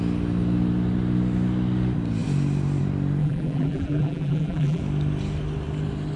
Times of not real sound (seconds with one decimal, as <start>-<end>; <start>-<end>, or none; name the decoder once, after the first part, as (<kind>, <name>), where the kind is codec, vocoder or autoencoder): 3.2-4.8 (vocoder, BigVGAN v2)

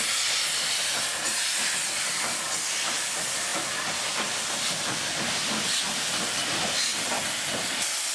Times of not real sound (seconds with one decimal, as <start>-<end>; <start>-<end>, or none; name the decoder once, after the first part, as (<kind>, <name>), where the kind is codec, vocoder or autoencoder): none

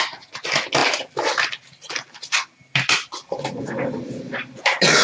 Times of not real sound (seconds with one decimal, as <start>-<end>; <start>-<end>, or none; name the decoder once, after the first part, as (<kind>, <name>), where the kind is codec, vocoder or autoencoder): none

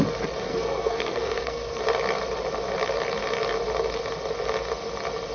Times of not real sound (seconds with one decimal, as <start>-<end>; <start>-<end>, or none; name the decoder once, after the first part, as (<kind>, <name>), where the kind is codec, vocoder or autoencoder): 0.5-1.8 (codec, SNAC)

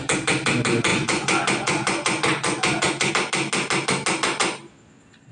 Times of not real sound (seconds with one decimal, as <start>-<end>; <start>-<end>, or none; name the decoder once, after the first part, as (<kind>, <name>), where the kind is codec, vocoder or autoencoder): 0.9-3.1 (vocoder, Vocos)